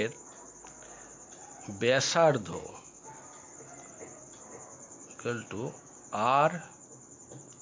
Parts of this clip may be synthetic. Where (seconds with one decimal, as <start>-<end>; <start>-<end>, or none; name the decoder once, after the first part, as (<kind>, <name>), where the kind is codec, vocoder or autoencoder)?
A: none